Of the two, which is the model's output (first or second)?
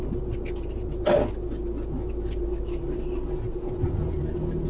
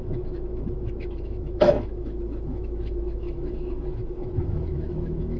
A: second